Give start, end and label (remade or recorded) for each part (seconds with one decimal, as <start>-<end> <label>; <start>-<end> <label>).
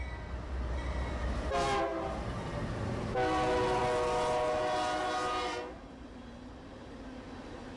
0.0-7.8 recorded